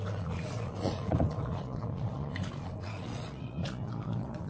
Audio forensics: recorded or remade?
remade